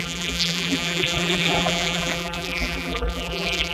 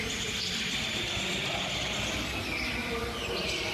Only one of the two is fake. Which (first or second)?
first